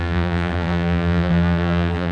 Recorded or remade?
remade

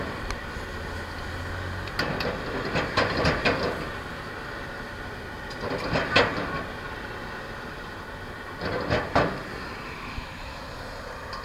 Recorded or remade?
recorded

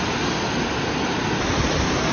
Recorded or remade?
recorded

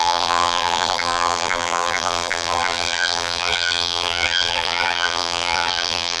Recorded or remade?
remade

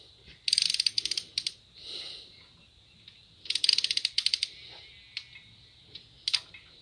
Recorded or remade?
recorded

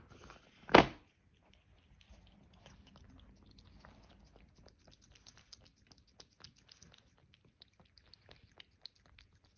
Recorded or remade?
recorded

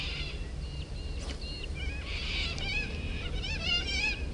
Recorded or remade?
remade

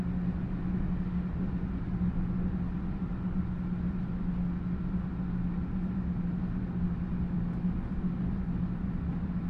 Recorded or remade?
recorded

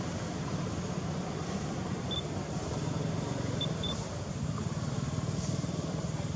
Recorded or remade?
remade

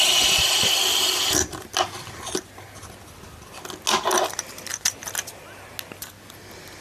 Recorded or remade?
recorded